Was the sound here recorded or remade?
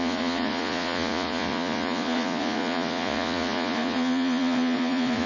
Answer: remade